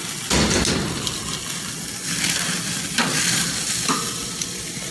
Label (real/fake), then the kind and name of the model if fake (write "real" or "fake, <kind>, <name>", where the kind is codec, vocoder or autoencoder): real